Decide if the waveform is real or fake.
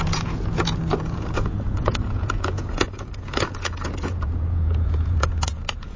fake